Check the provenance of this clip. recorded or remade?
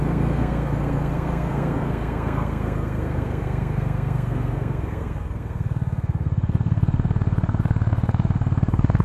remade